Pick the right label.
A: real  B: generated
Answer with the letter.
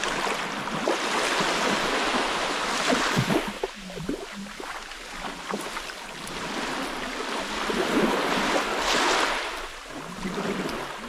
A